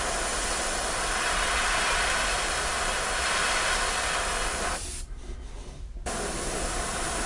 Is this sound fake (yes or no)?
no